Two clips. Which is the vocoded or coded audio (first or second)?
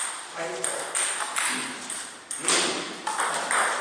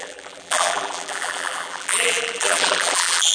second